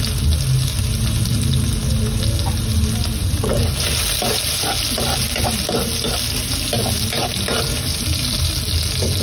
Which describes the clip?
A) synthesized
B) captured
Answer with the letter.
B